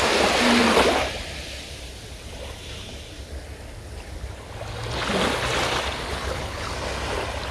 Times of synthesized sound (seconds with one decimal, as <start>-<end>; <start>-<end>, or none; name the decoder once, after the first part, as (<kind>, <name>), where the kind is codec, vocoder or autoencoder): 6.1-6.7 (codec, HILCodec)